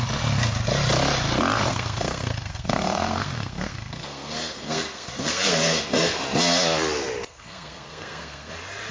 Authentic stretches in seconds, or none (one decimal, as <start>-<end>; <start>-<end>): 0.0-1.7; 6.2-7.3; 8.5-8.9